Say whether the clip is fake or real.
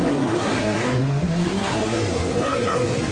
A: fake